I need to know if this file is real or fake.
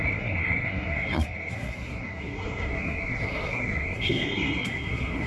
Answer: fake